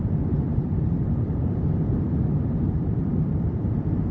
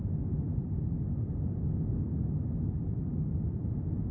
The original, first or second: second